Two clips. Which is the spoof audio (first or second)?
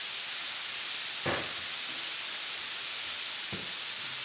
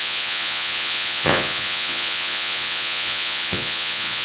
second